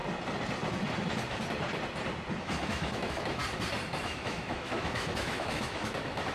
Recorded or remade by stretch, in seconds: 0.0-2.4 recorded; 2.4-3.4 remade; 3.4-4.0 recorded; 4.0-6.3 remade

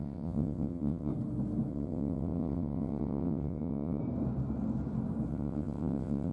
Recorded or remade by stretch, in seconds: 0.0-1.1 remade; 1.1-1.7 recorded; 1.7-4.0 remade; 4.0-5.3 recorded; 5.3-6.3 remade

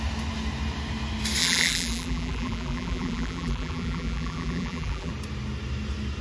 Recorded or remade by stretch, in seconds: 0.0-1.4 recorded; 1.4-5.1 remade; 5.1-6.2 recorded